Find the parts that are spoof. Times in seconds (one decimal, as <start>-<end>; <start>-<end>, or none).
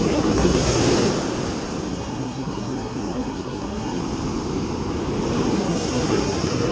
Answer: 0.0-0.8; 1.9-4.0; 5.5-6.7